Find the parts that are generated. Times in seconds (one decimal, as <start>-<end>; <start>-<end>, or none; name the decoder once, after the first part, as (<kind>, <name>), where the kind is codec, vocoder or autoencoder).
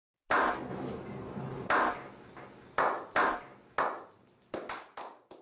none